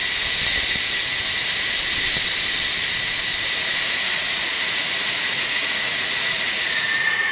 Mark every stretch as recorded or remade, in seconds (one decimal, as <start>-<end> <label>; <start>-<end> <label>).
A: 0.0-4.1 recorded; 4.1-7.3 remade

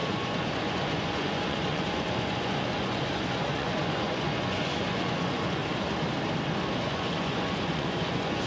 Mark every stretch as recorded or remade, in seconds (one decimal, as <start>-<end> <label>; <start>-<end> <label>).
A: 0.0-5.6 remade; 5.6-6.8 recorded; 6.8-8.5 remade